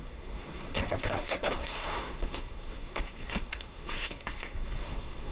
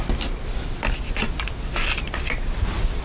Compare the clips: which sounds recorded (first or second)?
second